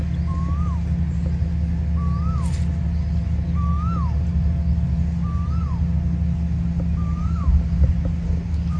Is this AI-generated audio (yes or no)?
no